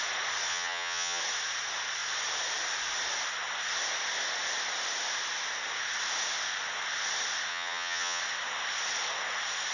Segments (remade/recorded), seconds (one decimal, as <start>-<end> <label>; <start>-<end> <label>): 0.0-0.5 recorded; 0.5-1.2 remade; 1.2-7.5 recorded; 7.5-8.2 remade; 8.2-9.7 recorded